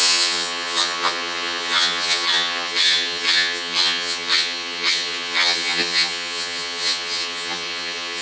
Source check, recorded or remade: remade